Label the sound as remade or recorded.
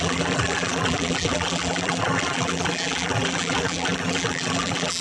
remade